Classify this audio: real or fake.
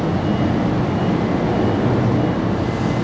real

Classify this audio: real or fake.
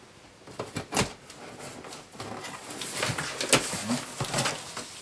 real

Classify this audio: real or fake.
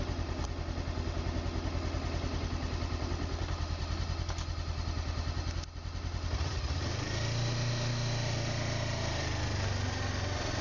real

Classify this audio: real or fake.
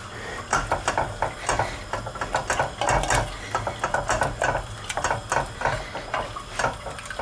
real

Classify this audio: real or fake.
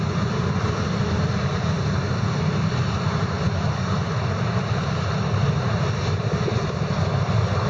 real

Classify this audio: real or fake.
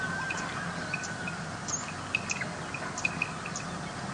real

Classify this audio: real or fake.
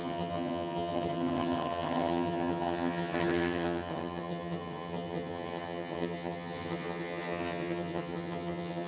fake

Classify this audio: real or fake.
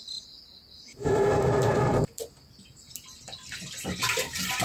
fake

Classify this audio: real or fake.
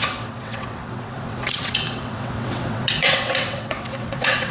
fake